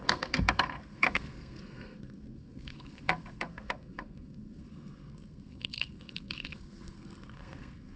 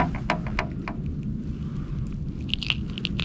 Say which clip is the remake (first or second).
first